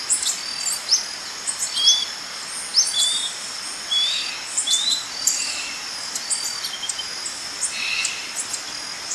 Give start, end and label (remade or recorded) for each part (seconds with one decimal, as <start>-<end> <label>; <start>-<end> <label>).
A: 0.0-9.1 recorded